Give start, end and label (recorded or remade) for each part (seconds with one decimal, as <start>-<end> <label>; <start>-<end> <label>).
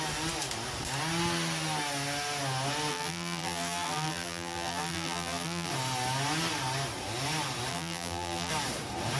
0.0-2.9 recorded; 2.9-5.7 remade; 5.7-7.7 recorded; 7.7-8.5 remade; 8.5-9.2 recorded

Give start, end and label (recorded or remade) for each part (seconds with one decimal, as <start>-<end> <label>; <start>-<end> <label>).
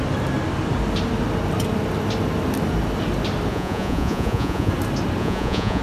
0.0-3.5 recorded; 3.5-4.7 remade; 4.7-5.2 recorded; 5.2-5.8 remade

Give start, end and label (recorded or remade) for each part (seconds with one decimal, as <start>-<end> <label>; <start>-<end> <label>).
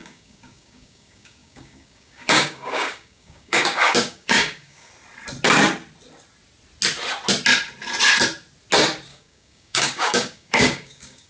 0.0-4.9 remade; 4.9-9.1 recorded; 9.1-11.3 remade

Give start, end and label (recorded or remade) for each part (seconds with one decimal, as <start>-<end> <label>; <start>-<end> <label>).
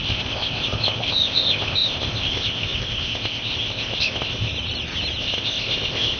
0.0-4.5 remade; 4.5-5.2 recorded; 5.2-6.2 remade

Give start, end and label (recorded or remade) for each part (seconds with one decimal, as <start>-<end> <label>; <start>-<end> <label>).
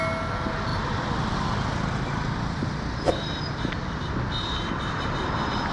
0.0-5.7 recorded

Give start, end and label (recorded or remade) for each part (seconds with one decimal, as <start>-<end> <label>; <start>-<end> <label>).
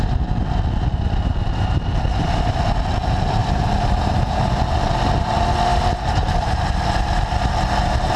0.0-3.4 recorded; 3.4-4.5 remade; 4.5-8.2 recorded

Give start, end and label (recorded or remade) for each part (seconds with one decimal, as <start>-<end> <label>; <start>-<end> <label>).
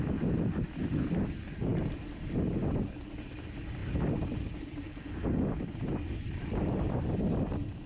0.0-7.9 recorded